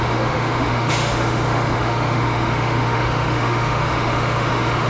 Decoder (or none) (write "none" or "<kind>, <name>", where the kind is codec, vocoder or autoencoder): autoencoder, DAC-VAE